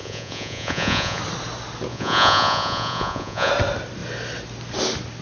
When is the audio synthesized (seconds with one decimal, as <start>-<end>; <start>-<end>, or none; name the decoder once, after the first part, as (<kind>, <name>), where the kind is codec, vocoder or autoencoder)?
0.0-1.2 (vocoder, Vocos); 1.9-3.5